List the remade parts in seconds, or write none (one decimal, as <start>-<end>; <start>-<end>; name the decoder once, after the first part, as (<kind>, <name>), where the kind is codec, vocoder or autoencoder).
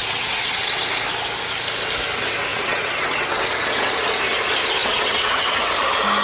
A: 0.0-0.8 (vocoder, WaveNeXt); 2.5-3.4; 4.8-5.7